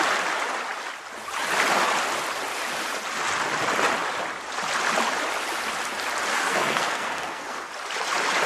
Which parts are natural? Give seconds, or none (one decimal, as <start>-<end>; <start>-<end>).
0.0-6.3; 7.7-8.5